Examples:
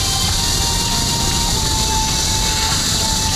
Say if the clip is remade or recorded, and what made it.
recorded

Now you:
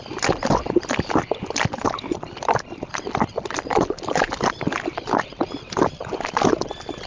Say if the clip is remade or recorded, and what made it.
recorded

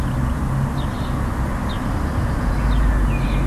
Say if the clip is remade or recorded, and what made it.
recorded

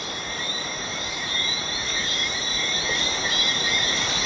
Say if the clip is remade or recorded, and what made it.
remade, vocoder, BigVGAN v2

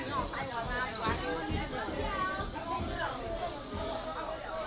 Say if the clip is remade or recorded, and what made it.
recorded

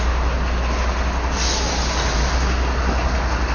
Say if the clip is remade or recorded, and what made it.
recorded